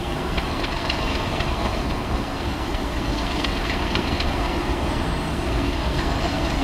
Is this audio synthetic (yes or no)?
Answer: yes